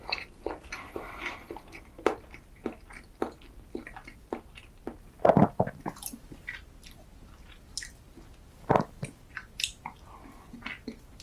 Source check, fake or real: real